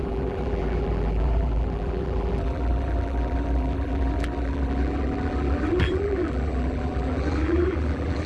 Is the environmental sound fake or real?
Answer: fake